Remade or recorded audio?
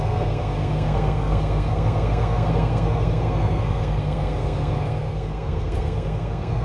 remade